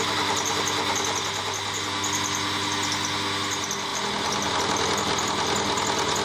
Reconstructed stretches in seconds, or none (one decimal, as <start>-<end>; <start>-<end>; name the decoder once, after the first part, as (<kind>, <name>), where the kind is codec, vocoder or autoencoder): none

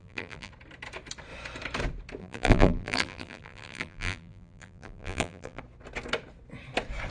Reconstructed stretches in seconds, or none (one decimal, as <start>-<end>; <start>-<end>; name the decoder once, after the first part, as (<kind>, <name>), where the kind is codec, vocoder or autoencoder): 0.0-0.5 (vocoder, BigVGAN v2); 2.2-5.6

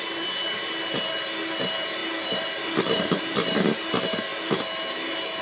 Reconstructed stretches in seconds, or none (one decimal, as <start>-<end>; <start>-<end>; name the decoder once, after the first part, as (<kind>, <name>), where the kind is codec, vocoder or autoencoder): 2.0-3.1 (vocoder, BigVGAN v2)

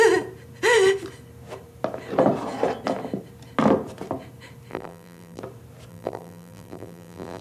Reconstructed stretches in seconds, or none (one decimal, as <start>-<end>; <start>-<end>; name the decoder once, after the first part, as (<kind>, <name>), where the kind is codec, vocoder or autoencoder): 4.7-5.4 (vocoder, BigVGAN v2); 5.9-7.4

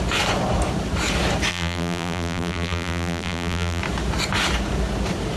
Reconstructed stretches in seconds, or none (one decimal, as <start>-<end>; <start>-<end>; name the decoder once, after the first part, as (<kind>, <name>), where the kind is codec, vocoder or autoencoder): 1.5-3.8 (vocoder, BigVGAN v2)

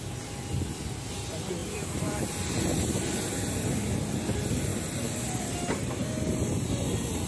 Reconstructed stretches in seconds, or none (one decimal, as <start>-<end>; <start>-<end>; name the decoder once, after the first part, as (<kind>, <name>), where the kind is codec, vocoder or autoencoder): 1.6-3.7 (vocoder, BigVGAN v2); 4.7-5.5

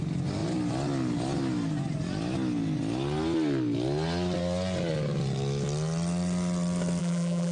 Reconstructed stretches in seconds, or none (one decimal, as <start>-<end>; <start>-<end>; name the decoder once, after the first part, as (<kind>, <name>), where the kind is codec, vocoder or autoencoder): 7.0-7.5 (vocoder, BigVGAN v2)

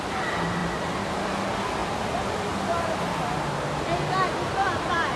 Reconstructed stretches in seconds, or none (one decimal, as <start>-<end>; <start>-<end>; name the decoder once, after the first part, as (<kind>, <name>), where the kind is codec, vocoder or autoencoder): none